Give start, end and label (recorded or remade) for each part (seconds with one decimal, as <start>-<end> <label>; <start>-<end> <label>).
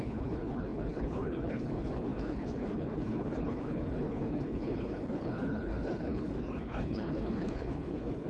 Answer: 0.0-8.3 remade